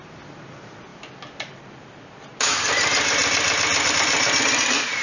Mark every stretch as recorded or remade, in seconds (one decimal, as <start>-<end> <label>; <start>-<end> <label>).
0.0-5.0 recorded